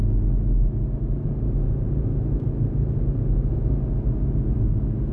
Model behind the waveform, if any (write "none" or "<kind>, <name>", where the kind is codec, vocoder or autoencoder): none